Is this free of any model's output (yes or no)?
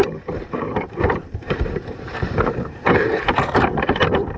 no